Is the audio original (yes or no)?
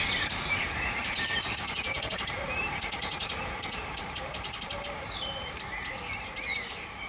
no